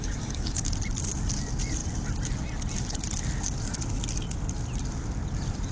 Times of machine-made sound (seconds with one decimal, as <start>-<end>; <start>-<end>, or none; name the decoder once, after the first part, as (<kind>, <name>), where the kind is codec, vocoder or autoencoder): 0.0-0.7 (autoencoder, DAC-VAE)